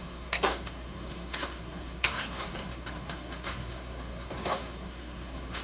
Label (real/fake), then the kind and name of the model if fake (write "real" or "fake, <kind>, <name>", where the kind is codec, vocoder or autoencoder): fake, codec, SNAC